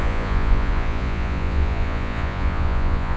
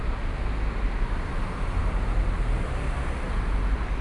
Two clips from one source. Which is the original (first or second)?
second